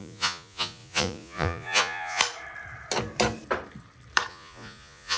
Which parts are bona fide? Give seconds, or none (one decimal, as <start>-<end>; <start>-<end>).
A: 2.2-4.3